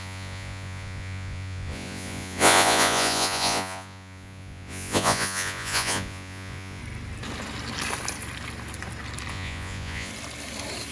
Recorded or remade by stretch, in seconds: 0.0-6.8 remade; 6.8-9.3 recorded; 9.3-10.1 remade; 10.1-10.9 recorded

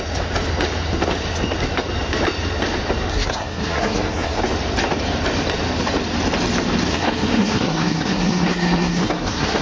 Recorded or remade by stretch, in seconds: 0.0-3.1 recorded; 3.1-4.4 remade; 4.4-6.9 recorded; 6.9-9.6 remade